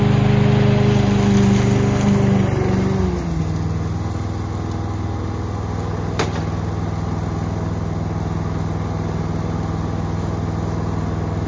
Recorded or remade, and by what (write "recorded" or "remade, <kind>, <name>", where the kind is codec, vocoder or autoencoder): recorded